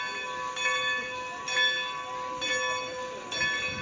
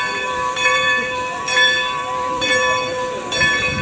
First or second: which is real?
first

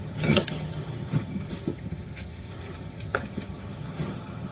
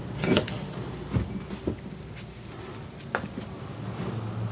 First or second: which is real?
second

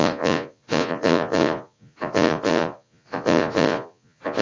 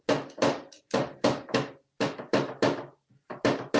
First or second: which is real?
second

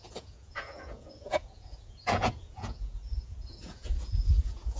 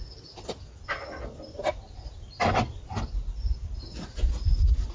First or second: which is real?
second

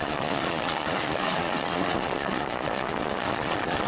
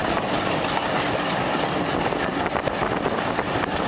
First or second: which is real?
second